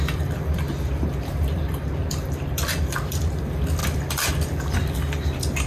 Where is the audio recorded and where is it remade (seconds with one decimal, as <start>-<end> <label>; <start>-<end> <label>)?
0.0-5.7 remade